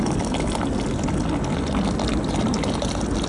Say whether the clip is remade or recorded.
recorded